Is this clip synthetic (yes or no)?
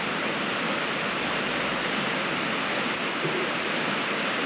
no